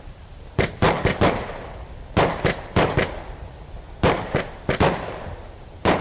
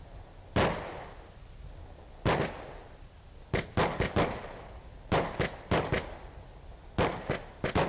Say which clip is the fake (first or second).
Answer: first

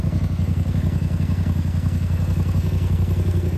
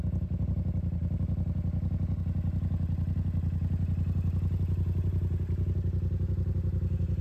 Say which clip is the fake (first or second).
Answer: first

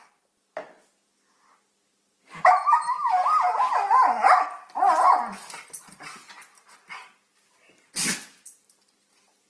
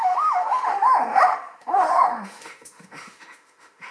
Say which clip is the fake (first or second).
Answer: second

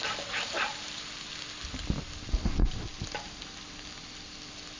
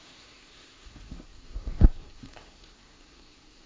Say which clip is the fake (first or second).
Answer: second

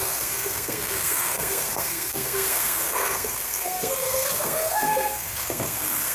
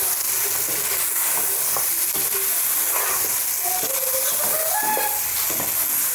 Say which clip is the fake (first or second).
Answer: first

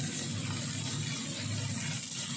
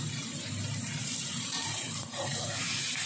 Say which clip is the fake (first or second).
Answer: second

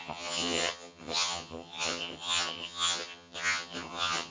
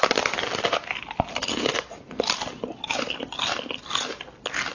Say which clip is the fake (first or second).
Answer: first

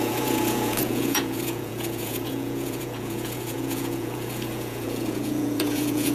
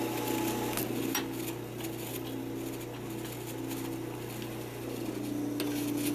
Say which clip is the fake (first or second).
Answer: first